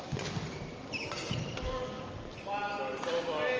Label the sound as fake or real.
real